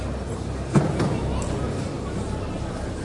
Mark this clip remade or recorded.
recorded